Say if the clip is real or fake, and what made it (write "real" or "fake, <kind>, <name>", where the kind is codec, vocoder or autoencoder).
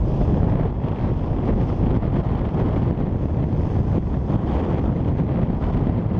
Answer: real